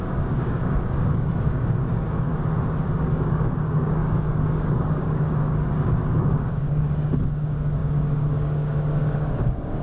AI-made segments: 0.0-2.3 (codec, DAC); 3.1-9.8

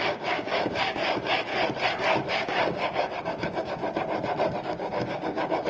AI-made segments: 0.0-1.5 (codec, DAC); 2.3-3.8; 4.6-5.7

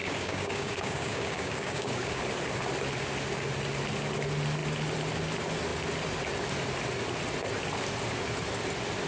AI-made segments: 0.0-2.2 (codec, DAC)

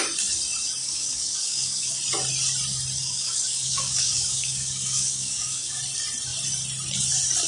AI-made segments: 0.8-2.0 (codec, DAC); 3.0-5.8

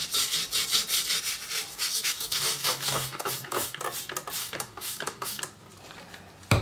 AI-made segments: 1.7-3.8 (codec, DAC); 4.4-5.4